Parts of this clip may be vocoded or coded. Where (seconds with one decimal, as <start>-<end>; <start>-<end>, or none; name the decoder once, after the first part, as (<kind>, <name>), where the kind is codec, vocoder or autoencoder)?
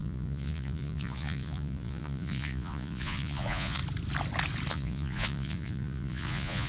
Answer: 0.0-3.8 (vocoder, Vocos); 4.7-6.7